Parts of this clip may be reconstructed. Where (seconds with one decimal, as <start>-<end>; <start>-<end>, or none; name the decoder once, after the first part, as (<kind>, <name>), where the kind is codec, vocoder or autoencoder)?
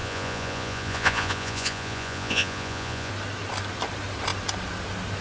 0.0-3.1 (vocoder, Vocos)